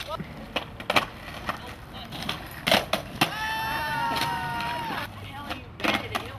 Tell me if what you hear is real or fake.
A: real